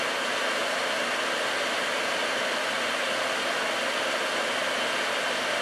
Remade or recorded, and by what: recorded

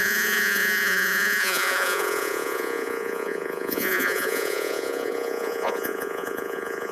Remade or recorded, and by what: remade, vocoder, Vocos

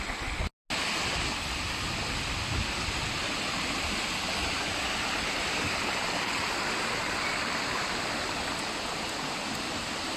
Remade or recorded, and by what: recorded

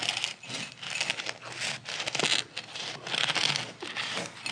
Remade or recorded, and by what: recorded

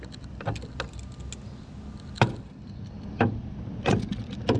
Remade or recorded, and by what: recorded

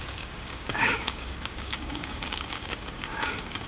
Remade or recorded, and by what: remade, codec, DAC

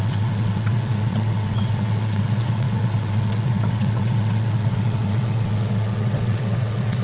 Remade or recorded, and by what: remade, vocoder, WaveNeXt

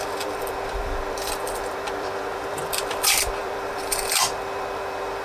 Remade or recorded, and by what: remade, vocoder, BigVGAN v2